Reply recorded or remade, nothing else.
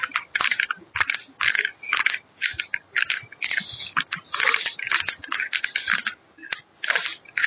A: recorded